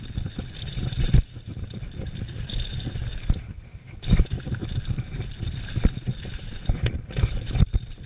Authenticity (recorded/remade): recorded